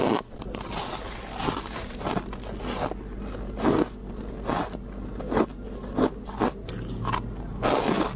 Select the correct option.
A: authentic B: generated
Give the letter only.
A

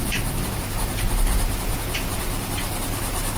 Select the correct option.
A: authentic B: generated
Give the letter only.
B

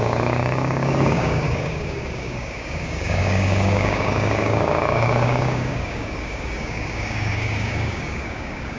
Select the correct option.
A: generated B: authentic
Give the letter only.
A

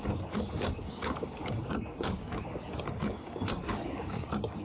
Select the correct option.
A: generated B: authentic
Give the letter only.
A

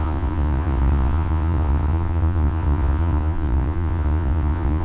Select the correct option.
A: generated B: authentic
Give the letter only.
A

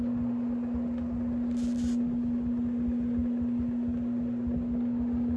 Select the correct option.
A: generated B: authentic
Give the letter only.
B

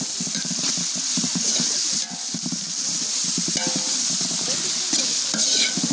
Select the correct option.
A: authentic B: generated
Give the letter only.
A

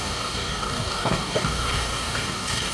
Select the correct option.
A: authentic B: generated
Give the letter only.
B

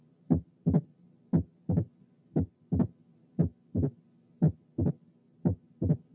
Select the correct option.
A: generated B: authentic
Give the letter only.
B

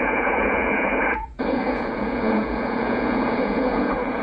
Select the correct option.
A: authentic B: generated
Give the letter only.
B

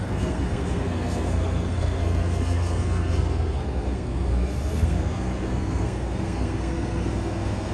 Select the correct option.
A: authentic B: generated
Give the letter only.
B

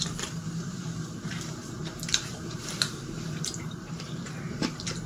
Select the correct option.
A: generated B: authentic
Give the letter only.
A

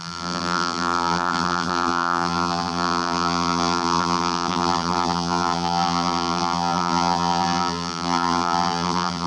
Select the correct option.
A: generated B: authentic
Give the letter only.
A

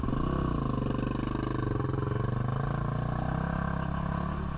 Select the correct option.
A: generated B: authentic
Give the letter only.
B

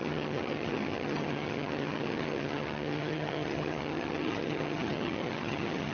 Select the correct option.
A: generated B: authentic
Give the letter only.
A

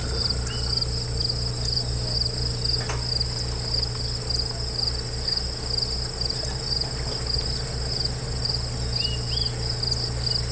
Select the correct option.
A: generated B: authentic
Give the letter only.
B